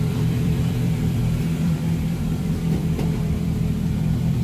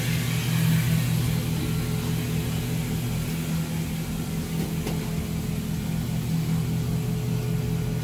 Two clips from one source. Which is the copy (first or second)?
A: first